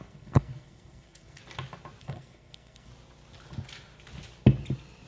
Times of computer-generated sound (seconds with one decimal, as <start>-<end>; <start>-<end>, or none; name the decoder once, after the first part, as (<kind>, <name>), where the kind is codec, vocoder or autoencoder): 0.0-1.4 (codec, SNAC); 2.0-2.9